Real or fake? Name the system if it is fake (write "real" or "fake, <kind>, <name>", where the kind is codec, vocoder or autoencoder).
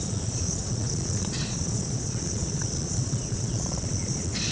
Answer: fake, vocoder, Vocos